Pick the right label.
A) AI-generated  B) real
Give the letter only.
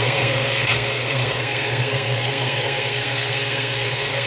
A